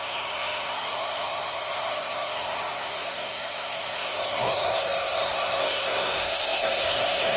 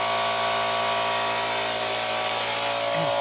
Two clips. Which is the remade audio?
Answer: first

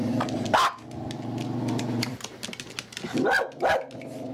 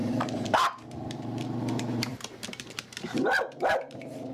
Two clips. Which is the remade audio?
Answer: second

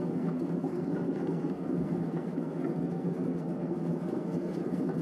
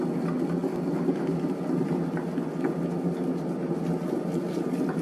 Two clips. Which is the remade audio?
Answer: first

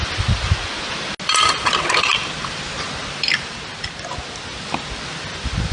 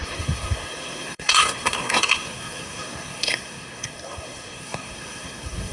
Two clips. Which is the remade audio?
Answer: second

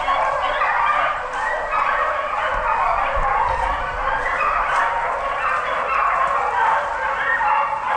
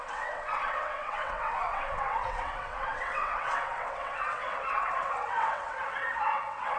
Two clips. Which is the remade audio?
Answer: second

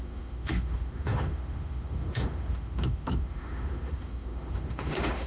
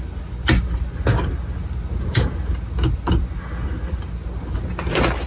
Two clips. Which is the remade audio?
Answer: first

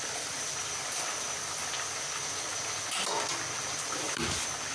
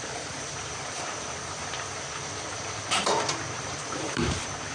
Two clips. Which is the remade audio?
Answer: second